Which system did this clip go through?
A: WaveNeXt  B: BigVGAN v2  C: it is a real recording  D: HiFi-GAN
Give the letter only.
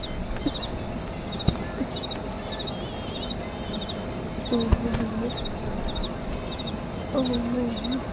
C